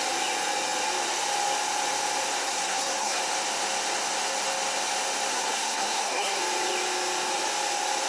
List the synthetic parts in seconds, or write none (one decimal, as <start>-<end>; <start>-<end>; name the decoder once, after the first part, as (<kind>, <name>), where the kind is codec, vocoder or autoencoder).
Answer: 2.4-3.2 (codec, SNAC); 5.3-6.4